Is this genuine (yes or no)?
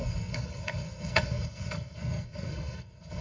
no